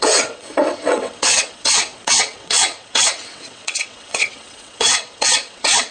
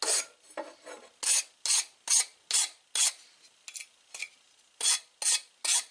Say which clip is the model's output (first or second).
first